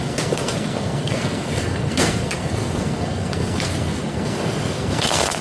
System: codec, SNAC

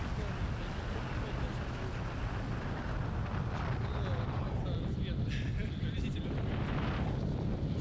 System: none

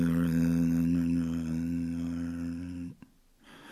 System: none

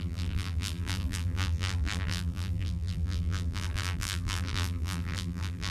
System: vocoder, BigVGAN v2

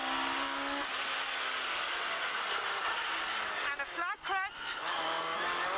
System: none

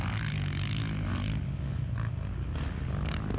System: none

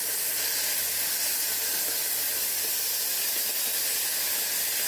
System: none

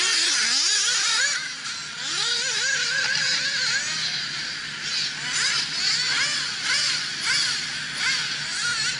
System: none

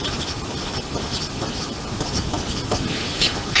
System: none